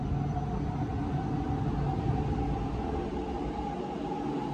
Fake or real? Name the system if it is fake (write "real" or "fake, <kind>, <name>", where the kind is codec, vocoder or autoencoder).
real